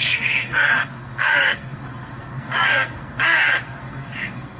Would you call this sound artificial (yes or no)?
yes